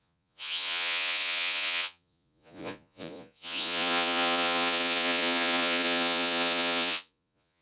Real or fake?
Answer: fake